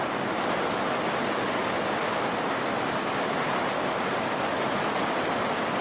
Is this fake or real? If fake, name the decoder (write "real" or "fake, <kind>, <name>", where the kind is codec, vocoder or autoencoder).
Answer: real